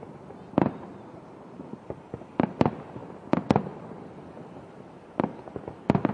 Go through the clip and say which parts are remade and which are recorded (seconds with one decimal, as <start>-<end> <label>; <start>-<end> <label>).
0.0-6.1 recorded